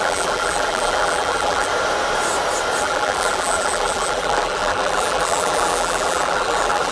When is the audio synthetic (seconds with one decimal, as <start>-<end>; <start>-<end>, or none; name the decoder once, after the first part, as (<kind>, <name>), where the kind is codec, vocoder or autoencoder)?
0.0-1.7 (vocoder, BigVGAN v2); 2.8-6.9